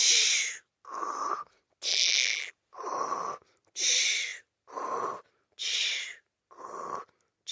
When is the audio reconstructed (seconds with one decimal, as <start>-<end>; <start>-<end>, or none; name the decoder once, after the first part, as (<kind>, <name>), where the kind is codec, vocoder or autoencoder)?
1.9-2.5 (vocoder, BigVGAN v2)